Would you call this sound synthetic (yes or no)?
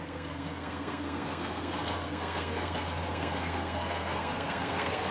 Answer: yes